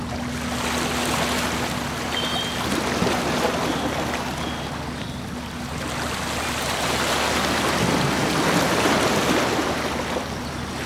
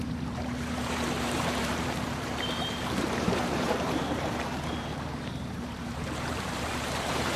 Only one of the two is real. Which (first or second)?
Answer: first